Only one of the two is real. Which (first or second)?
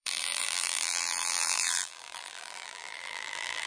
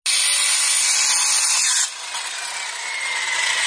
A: second